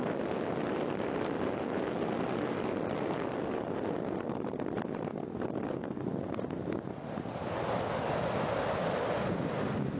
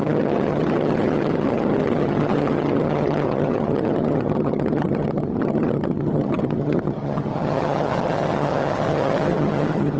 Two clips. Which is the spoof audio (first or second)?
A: second